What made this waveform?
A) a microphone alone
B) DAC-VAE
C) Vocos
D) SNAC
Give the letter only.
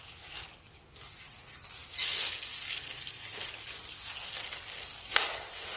A